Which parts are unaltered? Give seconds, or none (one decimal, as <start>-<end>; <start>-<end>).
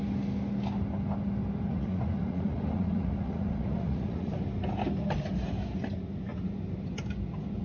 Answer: 0.0-1.7; 4.3-7.6